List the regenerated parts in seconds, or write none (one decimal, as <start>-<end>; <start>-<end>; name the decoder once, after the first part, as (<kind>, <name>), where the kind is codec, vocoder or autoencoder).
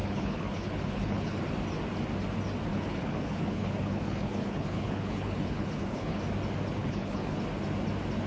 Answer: 0.0-1.4 (codec, HILCodec); 2.7-6.2; 6.8-7.4